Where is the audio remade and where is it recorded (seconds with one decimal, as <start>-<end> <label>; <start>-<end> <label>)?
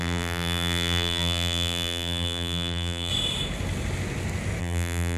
0.0-3.1 remade; 3.1-4.6 recorded; 4.6-5.2 remade